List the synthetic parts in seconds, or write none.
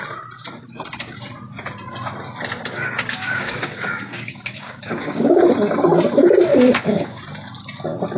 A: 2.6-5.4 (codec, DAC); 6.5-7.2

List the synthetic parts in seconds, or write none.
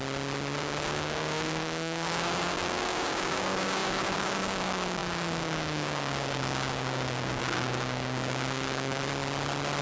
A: 0.6-9.0 (codec, DAC)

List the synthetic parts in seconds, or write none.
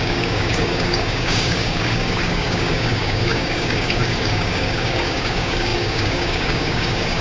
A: 0.0-7.2 (codec, DAC)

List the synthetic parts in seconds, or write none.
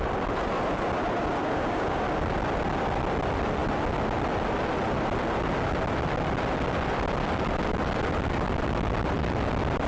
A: 1.4-2.0 (codec, DAC)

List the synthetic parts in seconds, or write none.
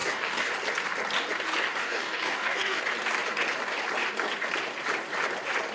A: 0.0-0.5 (codec, DAC); 1.8-2.8